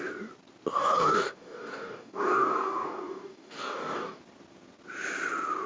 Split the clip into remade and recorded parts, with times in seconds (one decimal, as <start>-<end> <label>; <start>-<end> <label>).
0.0-0.8 recorded; 0.8-4.2 remade; 4.2-5.7 recorded